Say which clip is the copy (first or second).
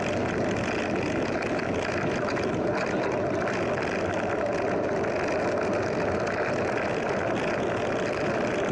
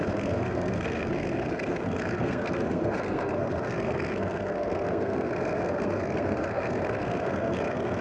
second